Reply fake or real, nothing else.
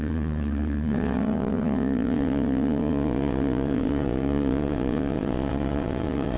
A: fake